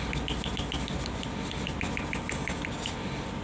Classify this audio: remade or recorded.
recorded